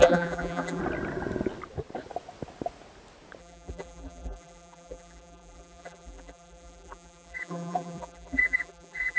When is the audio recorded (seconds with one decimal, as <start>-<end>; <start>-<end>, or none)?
0.8-3.4